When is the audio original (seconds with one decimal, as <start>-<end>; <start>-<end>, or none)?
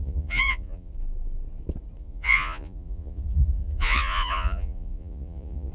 0.9-2.0